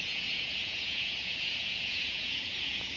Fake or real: fake